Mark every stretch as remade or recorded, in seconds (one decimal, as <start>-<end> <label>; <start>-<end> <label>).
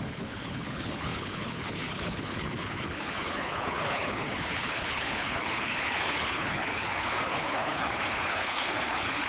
0.0-9.3 remade